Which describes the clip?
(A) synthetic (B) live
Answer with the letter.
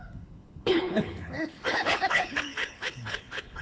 A